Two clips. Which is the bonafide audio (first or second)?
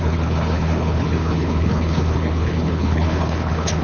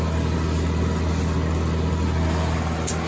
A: second